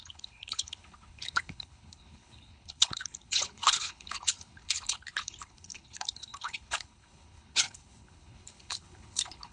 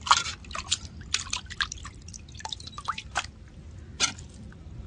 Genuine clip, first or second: second